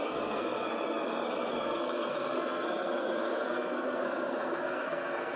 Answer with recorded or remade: remade